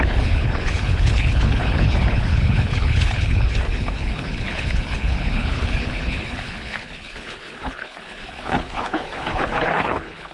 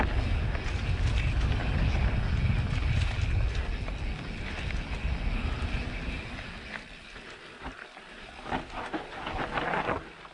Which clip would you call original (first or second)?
second